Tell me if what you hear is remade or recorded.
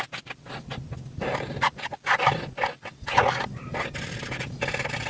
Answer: recorded